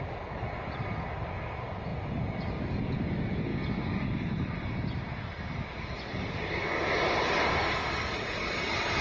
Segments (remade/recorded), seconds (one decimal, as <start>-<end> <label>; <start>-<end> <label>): 0.0-9.0 recorded